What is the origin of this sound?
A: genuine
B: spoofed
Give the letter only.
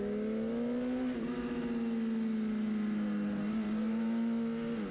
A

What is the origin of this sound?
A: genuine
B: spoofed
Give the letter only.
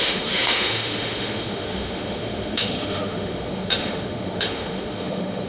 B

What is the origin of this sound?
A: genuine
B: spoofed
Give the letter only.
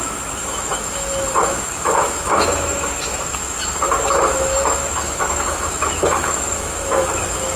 B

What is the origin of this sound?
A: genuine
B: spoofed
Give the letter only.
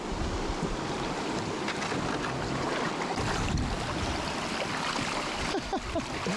A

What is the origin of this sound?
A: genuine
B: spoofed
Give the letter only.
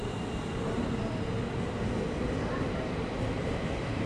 A